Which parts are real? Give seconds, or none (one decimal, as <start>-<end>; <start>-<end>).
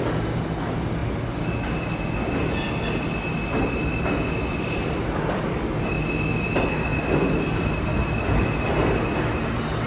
0.0-9.9